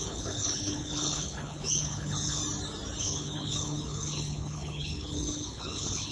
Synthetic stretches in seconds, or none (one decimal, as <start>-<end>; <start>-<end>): 0.0-2.4; 3.0-6.1